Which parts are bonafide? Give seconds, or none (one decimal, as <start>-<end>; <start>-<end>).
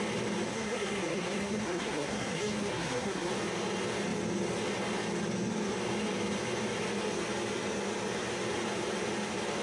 0.0-0.5; 3.3-9.6